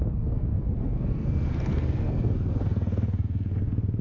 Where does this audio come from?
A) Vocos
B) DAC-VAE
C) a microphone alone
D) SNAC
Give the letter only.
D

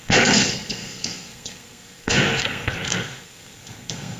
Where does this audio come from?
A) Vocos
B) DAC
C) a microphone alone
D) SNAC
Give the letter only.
D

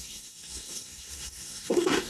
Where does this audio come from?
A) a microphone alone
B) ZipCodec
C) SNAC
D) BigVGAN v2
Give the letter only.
C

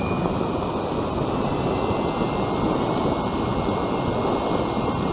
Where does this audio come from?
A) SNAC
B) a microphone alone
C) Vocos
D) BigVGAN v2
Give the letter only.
B